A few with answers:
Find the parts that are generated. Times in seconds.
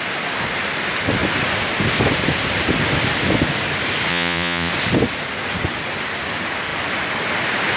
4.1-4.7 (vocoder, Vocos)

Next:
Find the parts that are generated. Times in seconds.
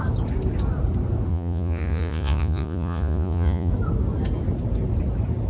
1.3-3.7 (vocoder, Vocos)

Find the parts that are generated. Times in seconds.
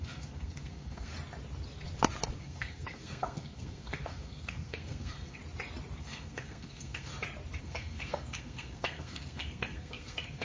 0.0-1.1 (codec, SNAC); 2.4-5.4; 6.0-7.1; 7.6-10.4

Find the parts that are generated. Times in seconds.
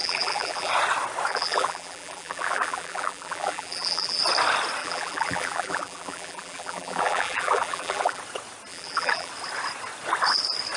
0.0-0.7 (vocoder, BigVGAN v2); 1.3-4.2; 4.8-8.2; 8.7-9.3